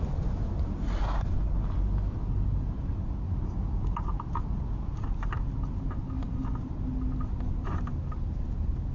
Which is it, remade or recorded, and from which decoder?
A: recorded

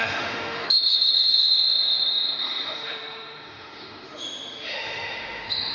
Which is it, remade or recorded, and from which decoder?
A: remade, autoencoder, DAC-VAE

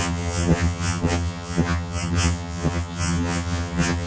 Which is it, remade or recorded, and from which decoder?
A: remade, vocoder, HiFi-GAN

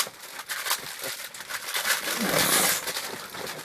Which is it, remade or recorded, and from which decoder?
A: recorded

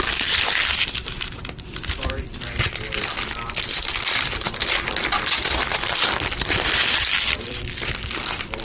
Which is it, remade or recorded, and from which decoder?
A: remade, vocoder, BigVGAN v2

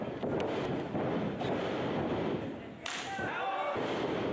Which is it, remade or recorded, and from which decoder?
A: recorded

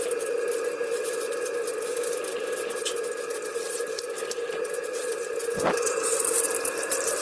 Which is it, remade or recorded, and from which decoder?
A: recorded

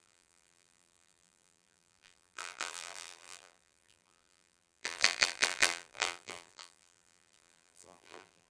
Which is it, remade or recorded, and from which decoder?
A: remade, vocoder, BigVGAN v2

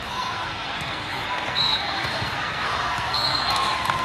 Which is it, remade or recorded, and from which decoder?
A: remade, codec, SNAC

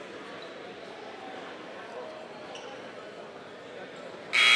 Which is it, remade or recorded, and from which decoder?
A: recorded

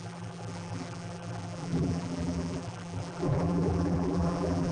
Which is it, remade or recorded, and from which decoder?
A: remade, vocoder, BigVGAN v2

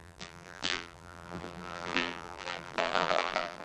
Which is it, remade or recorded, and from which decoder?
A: remade, vocoder, BigVGAN v2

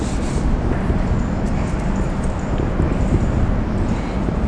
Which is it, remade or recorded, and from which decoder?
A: recorded